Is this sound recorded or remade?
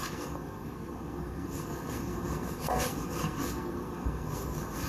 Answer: remade